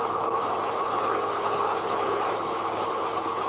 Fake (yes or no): yes